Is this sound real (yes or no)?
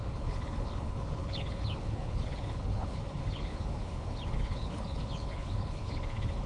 no